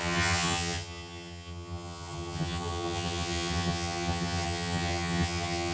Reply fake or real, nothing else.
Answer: fake